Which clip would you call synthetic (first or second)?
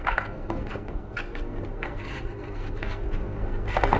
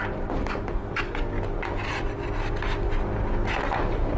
first